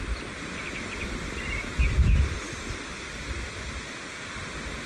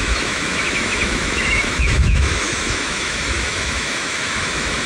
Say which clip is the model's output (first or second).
second